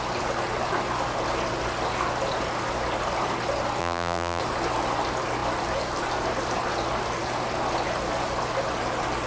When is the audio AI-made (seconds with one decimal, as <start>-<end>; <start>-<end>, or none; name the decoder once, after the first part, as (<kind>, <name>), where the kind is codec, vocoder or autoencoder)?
3.8-4.4 (vocoder, BigVGAN v2)